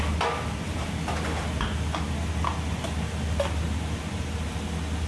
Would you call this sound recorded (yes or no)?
yes